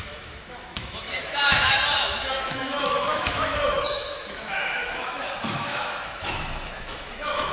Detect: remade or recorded remade